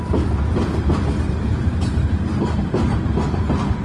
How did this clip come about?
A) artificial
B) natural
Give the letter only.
B